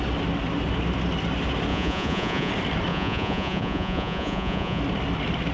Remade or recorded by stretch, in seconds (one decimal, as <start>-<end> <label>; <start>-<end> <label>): 0.0-1.7 recorded; 1.7-2.5 remade; 2.5-2.9 recorded; 2.9-4.8 remade; 4.8-5.5 recorded